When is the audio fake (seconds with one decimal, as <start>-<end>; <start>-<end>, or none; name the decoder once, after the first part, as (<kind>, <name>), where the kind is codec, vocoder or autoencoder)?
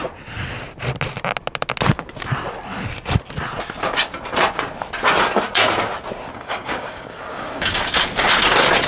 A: 6.3-7.8 (codec, DAC)